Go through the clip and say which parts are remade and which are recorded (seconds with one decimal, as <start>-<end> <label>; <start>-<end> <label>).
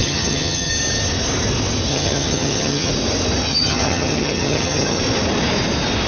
0.0-0.7 remade; 0.7-1.9 recorded; 1.9-2.9 remade; 2.9-3.5 recorded; 3.5-5.0 remade; 5.0-6.1 recorded